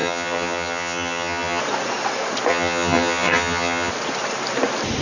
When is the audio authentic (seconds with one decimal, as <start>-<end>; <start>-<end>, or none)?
1.6-2.5; 3.9-5.0